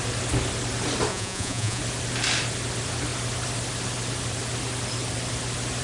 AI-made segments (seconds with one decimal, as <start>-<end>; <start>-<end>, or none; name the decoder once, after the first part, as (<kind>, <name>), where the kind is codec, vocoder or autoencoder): 1.1-1.8 (vocoder, Vocos)